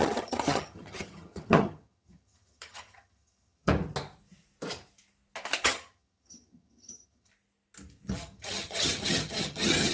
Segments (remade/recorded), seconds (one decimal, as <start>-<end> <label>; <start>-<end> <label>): 0.0-3.7 remade; 3.7-5.6 recorded; 5.6-7.3 remade; 7.3-8.2 recorded; 8.2-9.9 remade